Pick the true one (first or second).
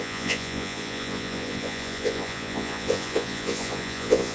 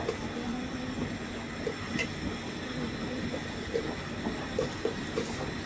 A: second